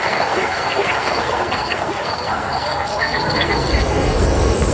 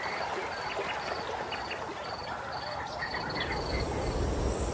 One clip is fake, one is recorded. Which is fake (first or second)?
first